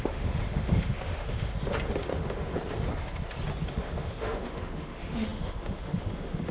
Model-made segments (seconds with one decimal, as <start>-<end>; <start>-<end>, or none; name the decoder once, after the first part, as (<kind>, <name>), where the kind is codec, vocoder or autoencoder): 0.0-1.5 (autoencoder, DAC-VAE); 2.0-2.5; 3.7-6.5